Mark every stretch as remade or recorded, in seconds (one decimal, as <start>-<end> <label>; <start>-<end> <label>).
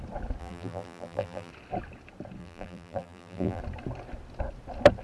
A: 0.0-0.4 recorded; 0.4-1.5 remade; 1.5-2.4 recorded; 2.4-3.6 remade; 3.6-5.0 recorded